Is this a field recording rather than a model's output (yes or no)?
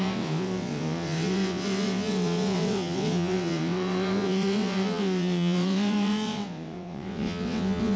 no